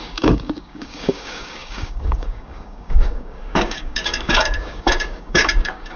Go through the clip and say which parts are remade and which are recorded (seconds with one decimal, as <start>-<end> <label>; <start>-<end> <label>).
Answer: 0.0-6.0 remade

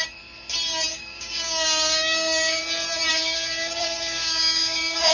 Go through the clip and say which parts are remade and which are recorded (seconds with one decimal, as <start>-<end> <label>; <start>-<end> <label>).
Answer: 0.0-0.9 recorded; 0.9-2.6 remade; 2.6-3.1 recorded; 3.1-5.1 remade

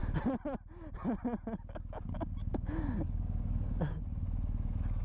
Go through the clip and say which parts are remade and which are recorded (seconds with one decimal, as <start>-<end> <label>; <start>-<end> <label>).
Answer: 0.0-2.5 recorded; 2.5-4.0 remade; 4.0-5.0 recorded

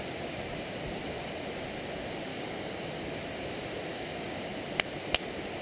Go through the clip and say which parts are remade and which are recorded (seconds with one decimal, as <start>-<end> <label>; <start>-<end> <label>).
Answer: 0.0-2.3 recorded; 2.3-2.8 remade; 2.8-3.9 recorded; 3.9-4.5 remade; 4.5-5.6 recorded

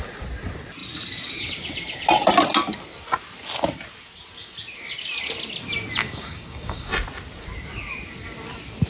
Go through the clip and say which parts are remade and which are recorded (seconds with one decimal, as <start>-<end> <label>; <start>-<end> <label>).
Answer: 0.0-6.0 recorded; 6.0-6.9 remade; 6.9-8.9 recorded

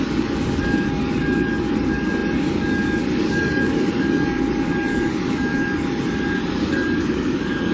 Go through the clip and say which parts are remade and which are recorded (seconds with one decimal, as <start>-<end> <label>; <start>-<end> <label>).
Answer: 0.0-7.7 remade

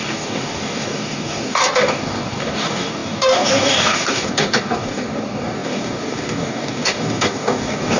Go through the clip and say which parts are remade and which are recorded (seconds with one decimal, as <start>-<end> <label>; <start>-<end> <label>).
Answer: 0.0-8.0 remade

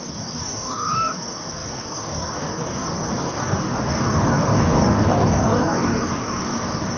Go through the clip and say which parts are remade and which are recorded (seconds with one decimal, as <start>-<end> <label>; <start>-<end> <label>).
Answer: 0.0-7.0 remade